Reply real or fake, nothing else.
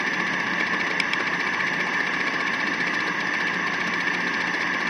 real